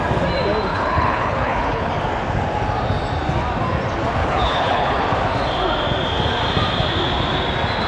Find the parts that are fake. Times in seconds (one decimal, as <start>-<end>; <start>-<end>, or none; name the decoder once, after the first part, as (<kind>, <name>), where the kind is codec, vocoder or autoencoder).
0.7-1.9 (codec, HILCodec); 4.2-5.0